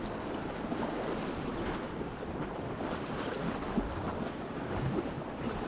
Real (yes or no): yes